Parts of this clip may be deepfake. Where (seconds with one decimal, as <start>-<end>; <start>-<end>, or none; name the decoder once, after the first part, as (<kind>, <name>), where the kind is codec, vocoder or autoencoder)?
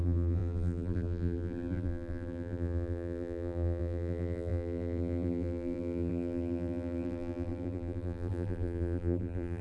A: 0.0-9.6 (vocoder, BigVGAN v2)